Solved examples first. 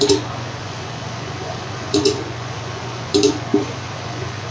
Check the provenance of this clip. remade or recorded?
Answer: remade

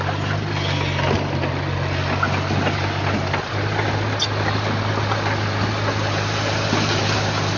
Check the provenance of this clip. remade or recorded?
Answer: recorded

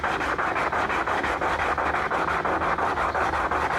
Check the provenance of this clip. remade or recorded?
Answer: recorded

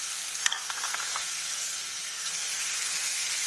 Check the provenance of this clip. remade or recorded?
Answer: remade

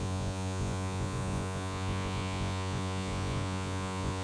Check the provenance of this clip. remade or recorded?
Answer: remade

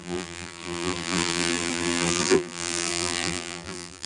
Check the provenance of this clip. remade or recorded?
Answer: remade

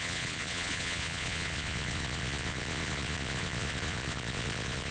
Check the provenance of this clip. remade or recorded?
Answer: remade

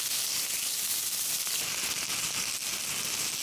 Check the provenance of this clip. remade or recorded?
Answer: recorded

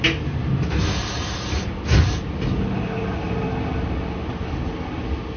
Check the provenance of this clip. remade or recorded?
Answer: recorded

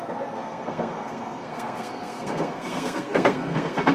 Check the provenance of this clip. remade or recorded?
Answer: remade